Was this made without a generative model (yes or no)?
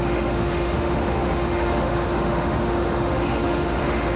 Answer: no